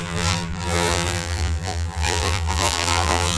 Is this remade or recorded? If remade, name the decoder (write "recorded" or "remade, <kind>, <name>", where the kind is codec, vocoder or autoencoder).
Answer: remade, vocoder, BigVGAN v2